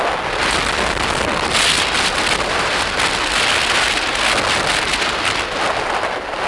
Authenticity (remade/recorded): recorded